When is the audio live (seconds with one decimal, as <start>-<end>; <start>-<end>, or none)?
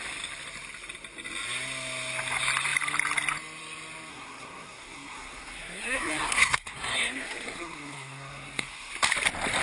0.0-4.1; 8.9-9.6